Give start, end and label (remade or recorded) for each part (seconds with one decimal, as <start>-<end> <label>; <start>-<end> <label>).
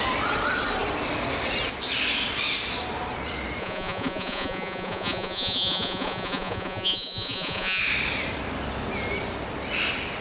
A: 0.0-3.6 recorded; 3.6-7.8 remade; 7.8-10.2 recorded